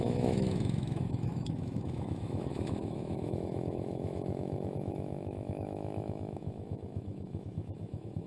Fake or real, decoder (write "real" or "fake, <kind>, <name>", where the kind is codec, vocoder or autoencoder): fake, autoencoder, DAC-VAE